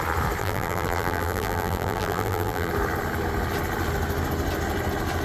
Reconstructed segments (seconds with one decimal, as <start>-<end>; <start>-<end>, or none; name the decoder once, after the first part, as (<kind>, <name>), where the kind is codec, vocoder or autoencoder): 0.4-2.7 (vocoder, BigVGAN v2)